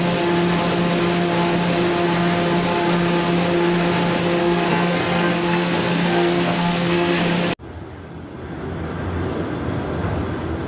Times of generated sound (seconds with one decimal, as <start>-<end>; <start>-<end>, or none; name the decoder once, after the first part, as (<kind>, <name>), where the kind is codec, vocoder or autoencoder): 4.4-7.2 (codec, SNAC)